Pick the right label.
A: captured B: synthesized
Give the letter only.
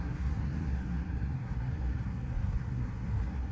B